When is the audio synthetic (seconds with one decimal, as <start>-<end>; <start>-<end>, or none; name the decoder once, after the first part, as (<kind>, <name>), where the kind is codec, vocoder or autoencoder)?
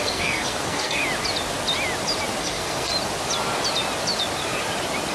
0.0-1.0 (codec, SNAC); 2.4-2.9